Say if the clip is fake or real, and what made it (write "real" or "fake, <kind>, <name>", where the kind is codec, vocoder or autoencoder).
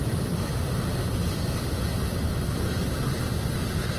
real